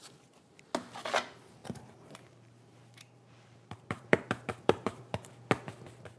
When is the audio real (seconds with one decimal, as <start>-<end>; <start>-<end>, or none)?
0.0-1.6; 5.3-6.2